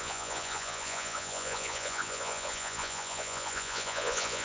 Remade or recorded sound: remade